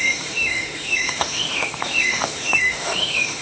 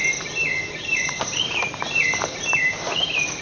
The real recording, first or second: second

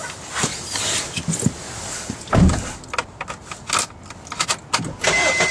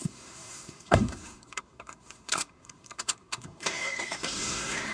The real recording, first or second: first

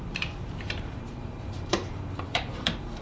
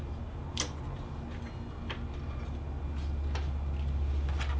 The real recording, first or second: second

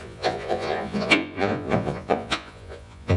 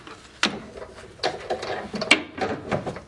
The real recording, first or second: second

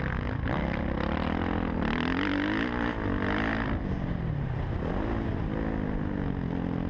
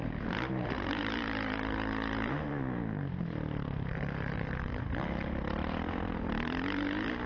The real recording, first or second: first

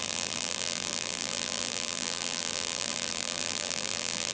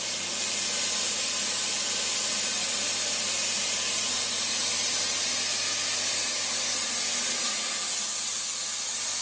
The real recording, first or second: second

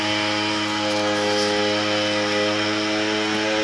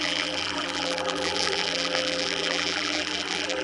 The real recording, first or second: first